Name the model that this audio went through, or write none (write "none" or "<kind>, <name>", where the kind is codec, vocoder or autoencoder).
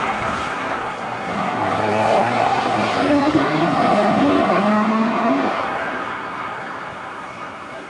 codec, SNAC